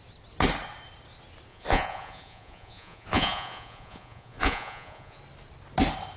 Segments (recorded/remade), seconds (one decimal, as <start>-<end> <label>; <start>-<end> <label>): 0.0-1.5 recorded; 1.5-5.2 remade; 5.2-6.2 recorded